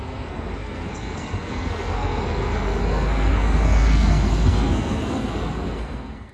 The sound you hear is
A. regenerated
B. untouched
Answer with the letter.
A